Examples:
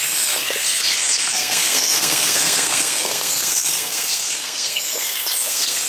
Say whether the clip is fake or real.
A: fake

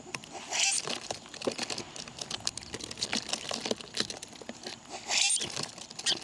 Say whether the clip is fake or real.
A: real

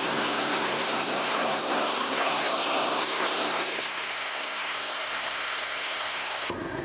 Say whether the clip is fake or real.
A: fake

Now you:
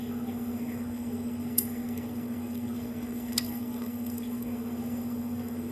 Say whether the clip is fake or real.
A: fake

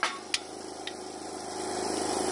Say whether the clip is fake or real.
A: real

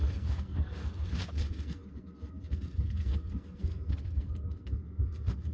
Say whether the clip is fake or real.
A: fake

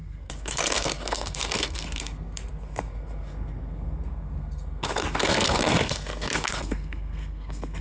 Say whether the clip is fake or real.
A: fake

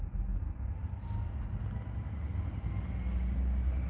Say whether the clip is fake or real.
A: real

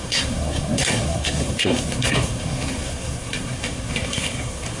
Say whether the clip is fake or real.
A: fake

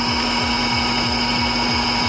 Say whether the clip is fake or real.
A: real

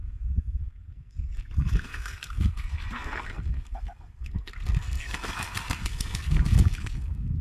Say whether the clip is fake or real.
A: fake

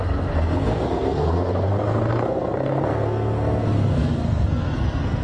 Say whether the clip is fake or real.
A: fake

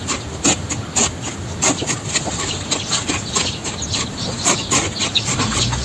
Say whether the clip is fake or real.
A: real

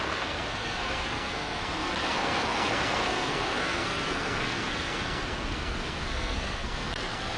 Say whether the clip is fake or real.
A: fake